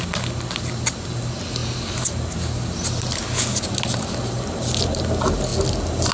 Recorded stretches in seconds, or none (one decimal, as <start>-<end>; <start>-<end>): 0.0-6.1